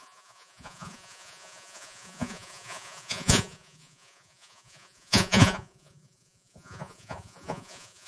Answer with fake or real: fake